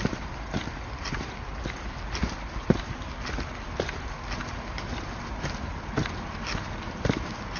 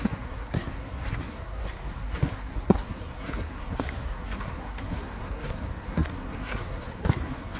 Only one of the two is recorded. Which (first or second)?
first